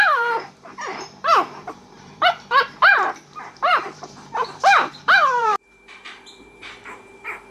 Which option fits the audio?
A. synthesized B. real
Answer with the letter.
A